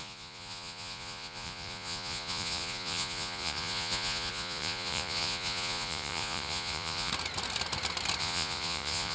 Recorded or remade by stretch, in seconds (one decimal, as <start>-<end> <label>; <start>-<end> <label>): 0.0-7.1 remade; 7.1-8.2 recorded; 8.2-9.1 remade